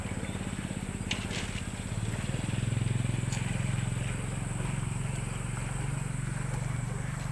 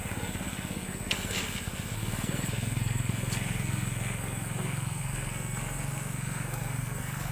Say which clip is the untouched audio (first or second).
first